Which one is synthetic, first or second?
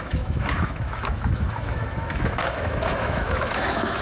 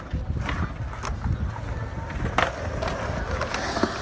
first